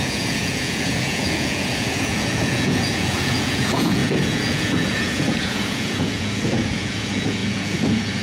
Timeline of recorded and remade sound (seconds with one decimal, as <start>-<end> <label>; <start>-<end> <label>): 0.0-8.2 remade